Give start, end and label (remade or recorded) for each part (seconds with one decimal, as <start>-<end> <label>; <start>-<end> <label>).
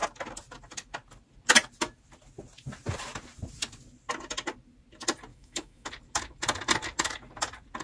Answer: 0.0-5.3 recorded; 5.3-5.9 remade; 5.9-7.8 recorded